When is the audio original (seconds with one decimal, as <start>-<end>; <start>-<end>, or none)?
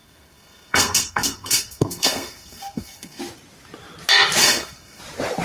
3.2-4.4; 5.0-5.4